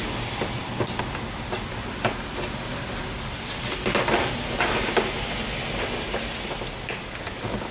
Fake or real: real